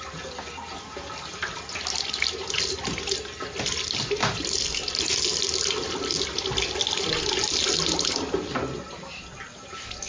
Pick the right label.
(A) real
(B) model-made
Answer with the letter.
A